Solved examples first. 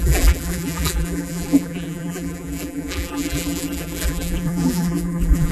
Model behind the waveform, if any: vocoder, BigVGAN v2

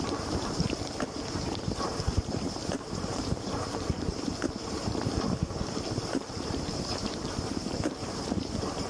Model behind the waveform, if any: vocoder, BigVGAN v2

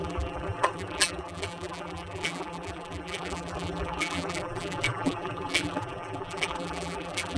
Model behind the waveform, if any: vocoder, BigVGAN v2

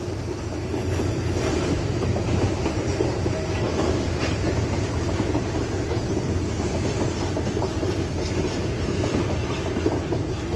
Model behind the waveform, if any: vocoder, BigVGAN v2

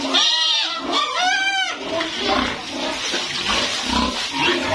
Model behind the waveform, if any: none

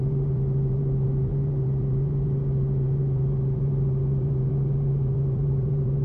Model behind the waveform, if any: vocoder, BigVGAN v2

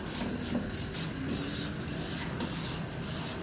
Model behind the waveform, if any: none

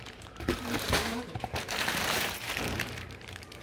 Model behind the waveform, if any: vocoder, BigVGAN v2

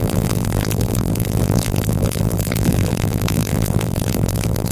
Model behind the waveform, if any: vocoder, BigVGAN v2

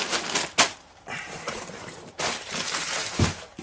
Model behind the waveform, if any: vocoder, BigVGAN v2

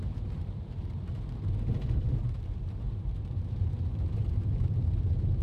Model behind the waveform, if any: vocoder, BigVGAN v2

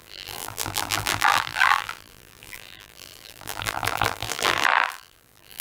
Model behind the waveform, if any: vocoder, BigVGAN v2